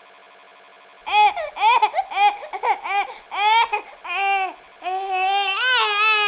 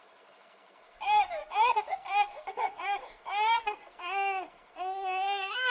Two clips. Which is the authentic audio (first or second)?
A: first